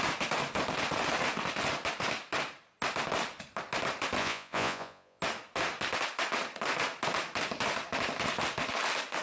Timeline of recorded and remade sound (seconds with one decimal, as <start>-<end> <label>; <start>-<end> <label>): 0.0-4.2 recorded; 4.2-5.2 remade; 5.2-9.2 recorded